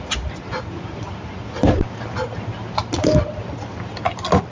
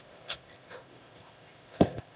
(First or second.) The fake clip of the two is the second